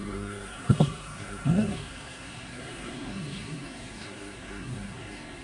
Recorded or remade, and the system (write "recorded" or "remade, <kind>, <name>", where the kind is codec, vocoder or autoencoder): remade, codec, SNAC